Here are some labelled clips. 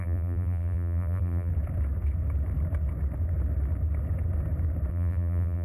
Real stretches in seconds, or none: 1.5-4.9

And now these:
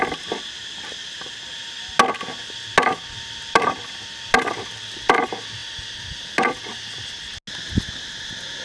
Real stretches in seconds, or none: 0.0-8.6

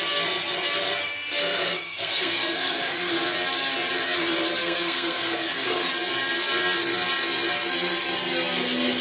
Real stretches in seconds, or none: 0.0-1.0; 3.1-4.6; 5.9-9.0